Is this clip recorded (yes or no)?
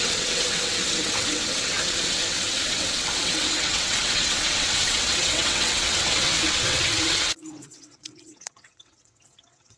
no